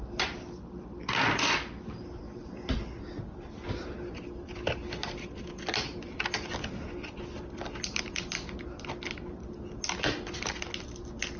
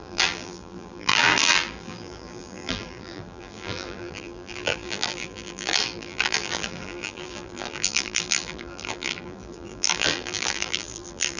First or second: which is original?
first